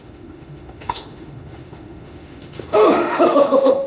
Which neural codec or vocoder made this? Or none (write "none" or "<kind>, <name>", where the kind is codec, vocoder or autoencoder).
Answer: autoencoder, DAC-VAE